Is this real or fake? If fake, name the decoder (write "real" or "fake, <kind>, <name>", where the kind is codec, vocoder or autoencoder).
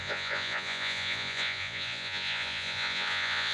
fake, vocoder, Vocos